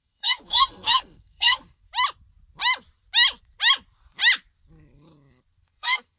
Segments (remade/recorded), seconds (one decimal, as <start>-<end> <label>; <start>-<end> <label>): 0.0-1.9 remade; 1.9-5.6 recorded; 5.6-6.2 remade